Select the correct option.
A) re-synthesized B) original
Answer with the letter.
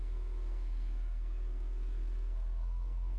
A